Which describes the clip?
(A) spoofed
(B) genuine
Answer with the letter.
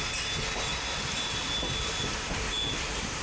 B